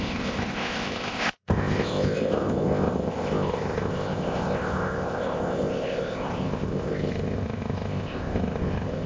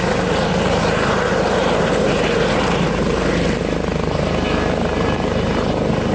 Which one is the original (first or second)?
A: second